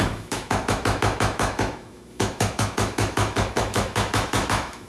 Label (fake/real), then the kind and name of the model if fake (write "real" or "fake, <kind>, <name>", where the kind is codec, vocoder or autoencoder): fake, autoencoder, DAC-VAE